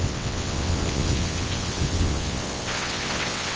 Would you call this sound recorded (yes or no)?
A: no